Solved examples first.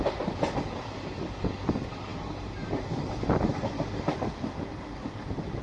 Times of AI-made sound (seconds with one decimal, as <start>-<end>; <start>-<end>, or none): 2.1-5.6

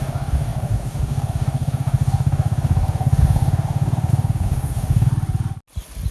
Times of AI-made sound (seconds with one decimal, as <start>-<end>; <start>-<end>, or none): 0.0-5.1

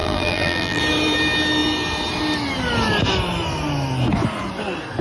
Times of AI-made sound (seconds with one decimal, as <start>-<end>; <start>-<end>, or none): 0.0-0.8